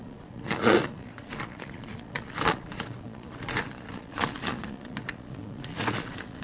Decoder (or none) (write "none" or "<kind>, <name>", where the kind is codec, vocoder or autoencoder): vocoder, Vocos